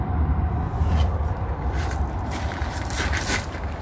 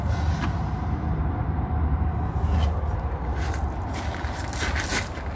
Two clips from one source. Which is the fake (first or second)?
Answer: first